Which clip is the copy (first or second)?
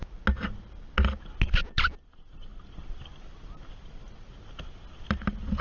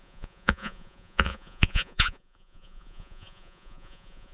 second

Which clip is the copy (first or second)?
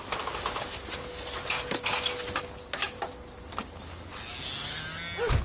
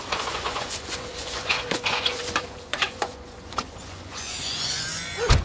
second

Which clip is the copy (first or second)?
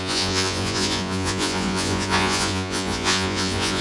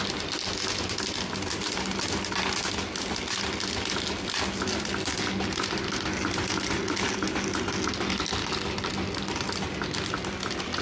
first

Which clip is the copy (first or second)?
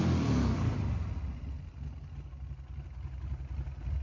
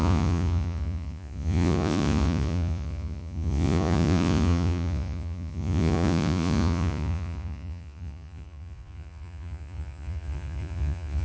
second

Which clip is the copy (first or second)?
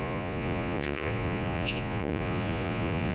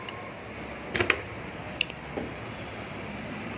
first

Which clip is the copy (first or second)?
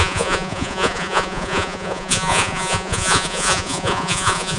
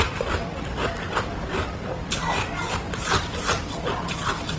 first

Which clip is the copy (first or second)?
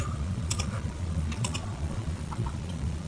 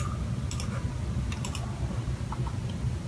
first